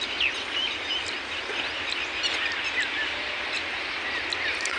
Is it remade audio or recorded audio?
recorded